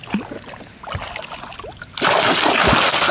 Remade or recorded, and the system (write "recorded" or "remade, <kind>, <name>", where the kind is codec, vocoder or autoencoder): recorded